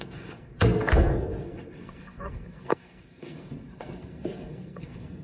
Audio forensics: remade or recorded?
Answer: remade